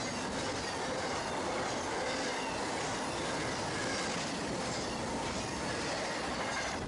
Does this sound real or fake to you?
real